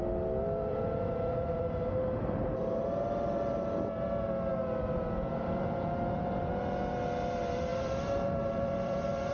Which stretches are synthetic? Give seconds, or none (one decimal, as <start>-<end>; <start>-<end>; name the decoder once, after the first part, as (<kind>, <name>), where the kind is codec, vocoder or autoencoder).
0.7-1.9 (vocoder, BigVGAN v2); 7.7-9.3